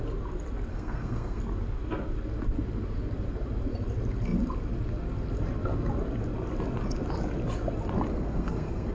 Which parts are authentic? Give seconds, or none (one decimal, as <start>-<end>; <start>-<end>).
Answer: 0.0-0.7; 1.4-8.1